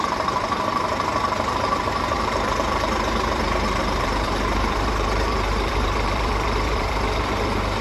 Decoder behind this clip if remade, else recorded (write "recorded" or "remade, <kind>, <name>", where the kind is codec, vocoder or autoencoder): remade, vocoder, BigVGAN v2